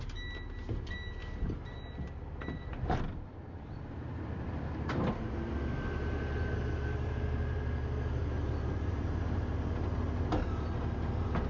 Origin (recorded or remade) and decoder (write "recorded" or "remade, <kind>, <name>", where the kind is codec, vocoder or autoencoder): recorded